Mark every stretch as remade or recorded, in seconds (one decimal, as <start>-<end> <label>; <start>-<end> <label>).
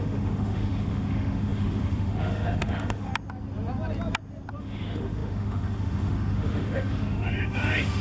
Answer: 0.0-3.1 remade; 3.1-4.6 recorded; 4.6-8.0 remade